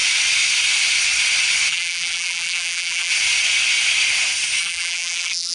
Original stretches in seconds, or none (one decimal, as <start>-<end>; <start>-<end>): 0.0-1.7; 3.1-4.6